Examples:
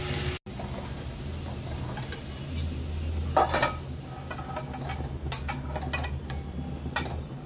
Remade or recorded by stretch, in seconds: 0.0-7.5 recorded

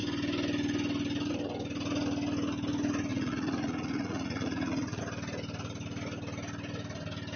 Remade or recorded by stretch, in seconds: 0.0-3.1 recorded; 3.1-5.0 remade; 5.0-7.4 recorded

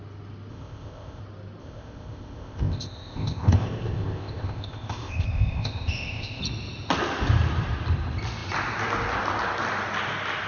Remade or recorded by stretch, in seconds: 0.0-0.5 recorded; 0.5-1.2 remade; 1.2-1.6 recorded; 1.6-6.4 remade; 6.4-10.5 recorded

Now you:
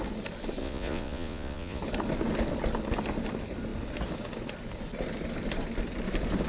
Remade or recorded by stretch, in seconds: 0.0-0.6 recorded; 0.6-1.8 remade; 1.8-6.5 recorded